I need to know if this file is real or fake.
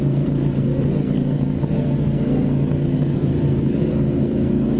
fake